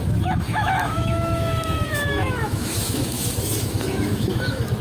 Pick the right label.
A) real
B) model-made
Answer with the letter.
B